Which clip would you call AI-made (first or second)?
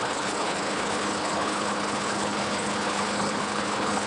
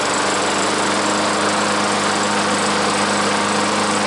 first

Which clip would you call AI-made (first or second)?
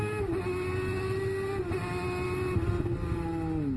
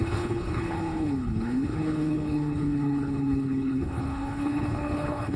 second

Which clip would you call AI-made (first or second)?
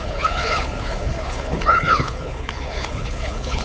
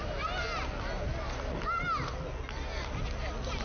first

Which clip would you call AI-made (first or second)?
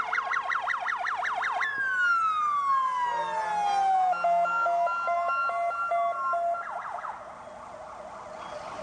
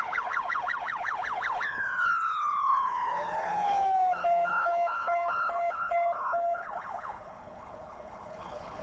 second